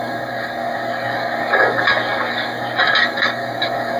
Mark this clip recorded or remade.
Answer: remade